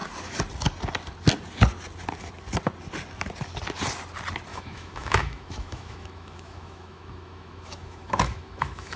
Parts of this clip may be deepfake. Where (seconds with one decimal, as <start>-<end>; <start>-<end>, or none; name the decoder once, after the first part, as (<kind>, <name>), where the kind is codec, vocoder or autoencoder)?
4.5-9.0 (autoencoder, DAC-VAE)